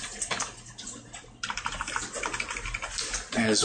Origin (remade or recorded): recorded